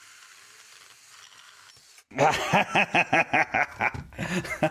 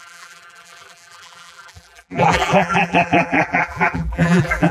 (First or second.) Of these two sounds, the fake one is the second